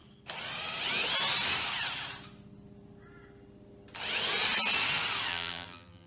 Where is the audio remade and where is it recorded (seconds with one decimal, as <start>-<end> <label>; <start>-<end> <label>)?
0.0-5.3 recorded; 5.3-6.1 remade